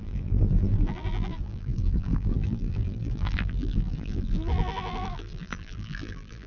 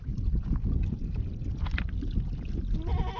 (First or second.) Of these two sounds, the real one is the second